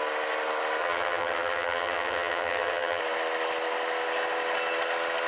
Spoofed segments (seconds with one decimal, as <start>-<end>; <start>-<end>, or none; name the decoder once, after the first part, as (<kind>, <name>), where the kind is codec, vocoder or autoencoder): 0.8-3.0 (vocoder, HiFi-GAN)